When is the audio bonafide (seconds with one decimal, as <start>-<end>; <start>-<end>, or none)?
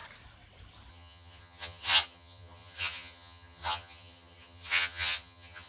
0.0-0.9